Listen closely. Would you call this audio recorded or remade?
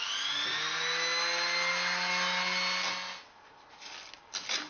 recorded